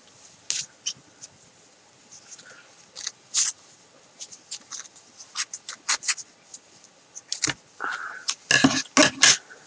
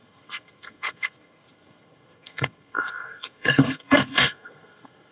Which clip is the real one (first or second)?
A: first